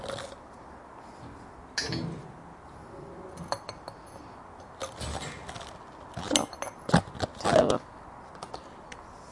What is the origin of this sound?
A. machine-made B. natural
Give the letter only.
B